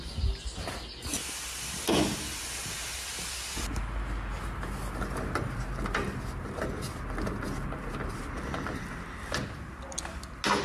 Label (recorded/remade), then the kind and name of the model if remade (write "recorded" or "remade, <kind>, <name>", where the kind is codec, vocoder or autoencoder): recorded